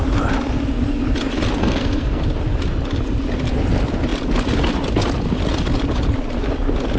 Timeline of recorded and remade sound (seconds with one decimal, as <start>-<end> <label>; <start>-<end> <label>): 0.0-1.6 recorded; 1.6-2.2 remade; 2.2-7.0 recorded